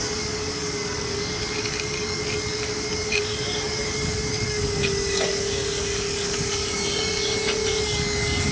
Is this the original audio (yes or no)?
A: no